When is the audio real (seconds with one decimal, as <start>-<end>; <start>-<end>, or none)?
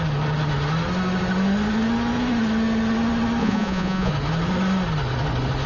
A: 0.0-3.4; 4.1-5.7